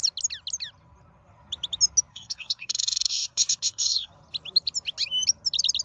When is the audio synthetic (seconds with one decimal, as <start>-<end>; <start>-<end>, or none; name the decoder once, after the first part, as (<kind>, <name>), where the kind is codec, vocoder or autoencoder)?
2.1-4.1 (codec, SNAC)